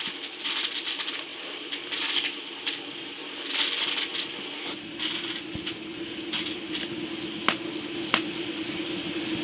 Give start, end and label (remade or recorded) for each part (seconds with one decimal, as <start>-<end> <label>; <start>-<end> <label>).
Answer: 0.0-9.4 recorded